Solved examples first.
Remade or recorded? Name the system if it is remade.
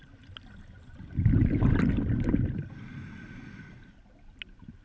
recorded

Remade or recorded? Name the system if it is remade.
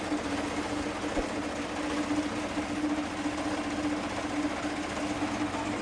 recorded